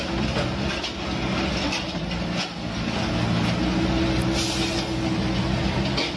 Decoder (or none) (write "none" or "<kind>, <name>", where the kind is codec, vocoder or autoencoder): none